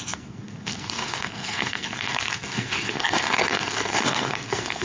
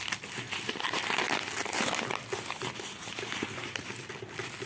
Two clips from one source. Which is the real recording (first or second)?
second